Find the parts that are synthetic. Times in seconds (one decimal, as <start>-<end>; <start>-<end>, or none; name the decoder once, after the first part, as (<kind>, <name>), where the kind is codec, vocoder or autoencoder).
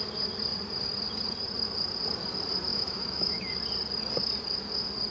2.7-3.5 (autoencoder, DAC-VAE)